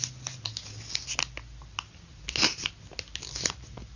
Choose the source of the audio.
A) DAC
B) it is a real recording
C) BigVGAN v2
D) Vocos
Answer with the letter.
B